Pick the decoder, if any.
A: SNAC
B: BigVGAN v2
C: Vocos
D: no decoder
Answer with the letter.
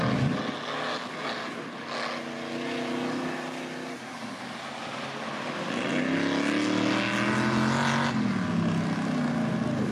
D